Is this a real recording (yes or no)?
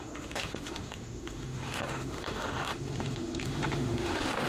no